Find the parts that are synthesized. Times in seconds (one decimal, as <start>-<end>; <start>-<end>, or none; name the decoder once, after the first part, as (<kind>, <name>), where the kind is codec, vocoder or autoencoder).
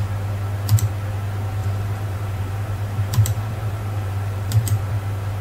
1.6-4.8 (vocoder, BigVGAN v2)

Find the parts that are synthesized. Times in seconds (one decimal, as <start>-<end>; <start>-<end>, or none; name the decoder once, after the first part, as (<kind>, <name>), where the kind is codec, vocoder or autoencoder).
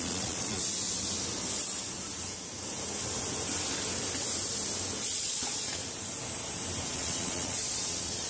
0.0-0.6 (vocoder, Vocos); 5.0-5.8; 6.9-8.3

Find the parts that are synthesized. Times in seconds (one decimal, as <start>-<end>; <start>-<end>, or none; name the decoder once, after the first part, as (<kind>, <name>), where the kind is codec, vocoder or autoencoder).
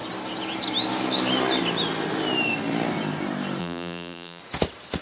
3.6-4.4 (vocoder, BigVGAN v2)